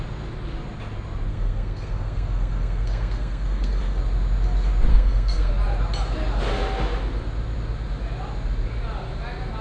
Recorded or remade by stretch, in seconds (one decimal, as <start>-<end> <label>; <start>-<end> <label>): 0.0-1.3 recorded; 1.3-4.0 remade; 4.0-4.9 recorded; 4.9-5.5 remade; 5.5-9.6 recorded